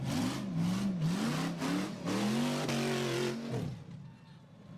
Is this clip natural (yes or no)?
yes